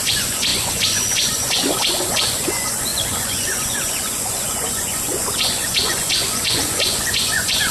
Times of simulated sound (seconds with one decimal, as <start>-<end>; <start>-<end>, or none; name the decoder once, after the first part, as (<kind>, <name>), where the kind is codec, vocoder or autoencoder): 0.0-7.7 (vocoder, Vocos)